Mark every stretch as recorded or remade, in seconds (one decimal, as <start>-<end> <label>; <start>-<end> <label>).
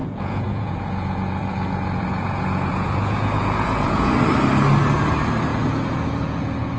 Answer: 0.0-4.1 remade; 4.1-5.5 recorded; 5.5-6.8 remade